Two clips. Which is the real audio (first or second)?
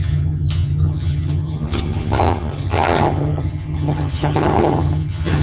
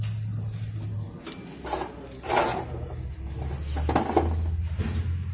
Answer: second